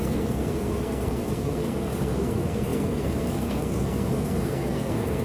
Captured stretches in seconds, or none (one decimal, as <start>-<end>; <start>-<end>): none